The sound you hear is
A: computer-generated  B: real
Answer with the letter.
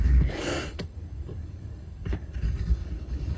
A